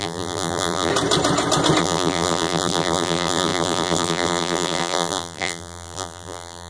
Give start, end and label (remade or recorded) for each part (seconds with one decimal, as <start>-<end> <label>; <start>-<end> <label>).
0.0-0.9 remade; 0.9-1.8 recorded; 1.8-6.7 remade